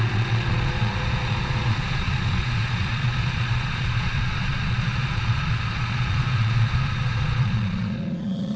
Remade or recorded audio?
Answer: remade